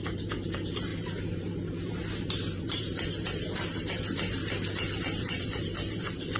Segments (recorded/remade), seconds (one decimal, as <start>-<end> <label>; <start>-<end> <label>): 0.0-4.4 remade; 4.4-5.2 recorded; 5.2-6.4 remade